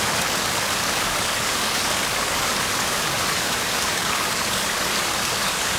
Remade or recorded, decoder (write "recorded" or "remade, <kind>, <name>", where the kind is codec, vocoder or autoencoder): remade, codec, DAC